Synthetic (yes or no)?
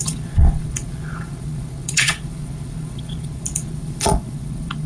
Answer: yes